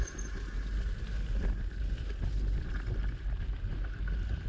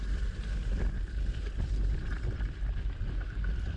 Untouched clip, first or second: first